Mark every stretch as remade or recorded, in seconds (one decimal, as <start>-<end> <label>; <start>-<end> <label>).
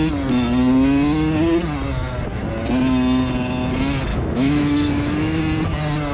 0.0-4.1 recorded; 4.1-5.4 remade; 5.4-6.1 recorded